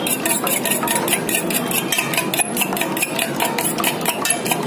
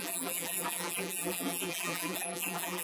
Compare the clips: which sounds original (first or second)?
first